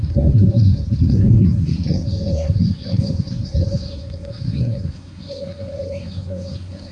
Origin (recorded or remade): remade